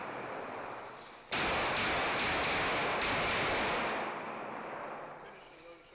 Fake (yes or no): no